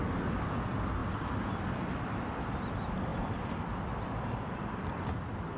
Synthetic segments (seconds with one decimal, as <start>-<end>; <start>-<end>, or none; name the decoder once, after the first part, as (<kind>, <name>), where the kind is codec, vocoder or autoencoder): 3.1-5.6 (vocoder, BigVGAN v2)